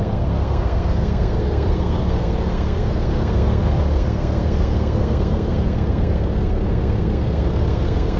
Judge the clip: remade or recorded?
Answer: remade